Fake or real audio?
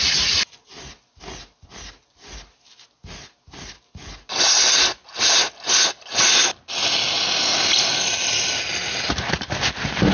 real